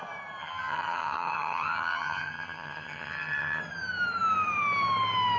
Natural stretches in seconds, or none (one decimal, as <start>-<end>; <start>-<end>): 0.0-0.4; 3.6-5.4